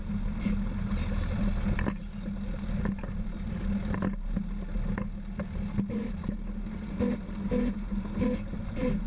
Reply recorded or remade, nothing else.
recorded